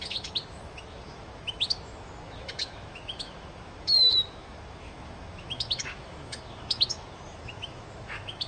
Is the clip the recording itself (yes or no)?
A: no